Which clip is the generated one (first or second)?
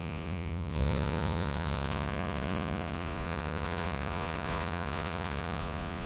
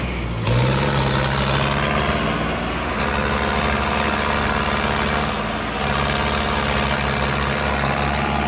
first